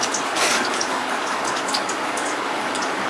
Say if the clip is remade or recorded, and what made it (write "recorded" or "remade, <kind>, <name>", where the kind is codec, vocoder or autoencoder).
remade, codec, DAC